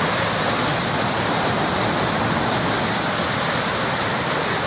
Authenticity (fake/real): real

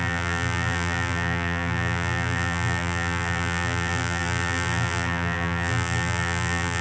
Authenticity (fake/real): fake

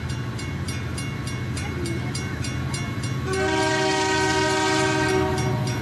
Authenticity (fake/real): real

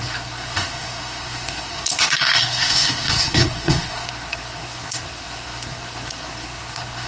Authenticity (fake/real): fake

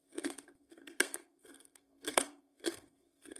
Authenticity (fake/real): fake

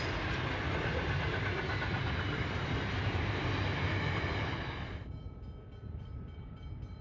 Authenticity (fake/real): real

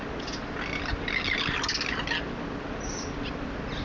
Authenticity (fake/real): real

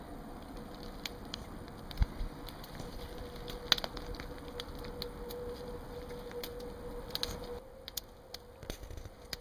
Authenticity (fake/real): real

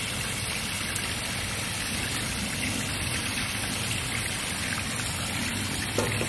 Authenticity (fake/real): real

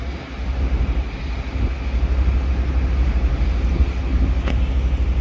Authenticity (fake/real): real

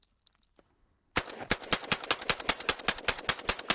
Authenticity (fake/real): fake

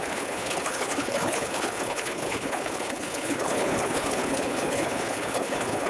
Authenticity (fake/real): fake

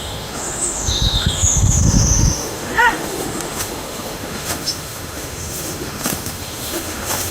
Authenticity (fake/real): fake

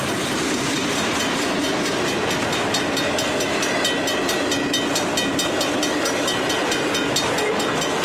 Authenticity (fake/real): real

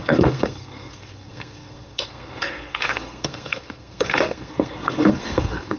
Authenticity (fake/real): fake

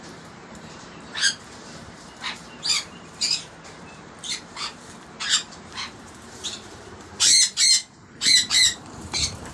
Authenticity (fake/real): fake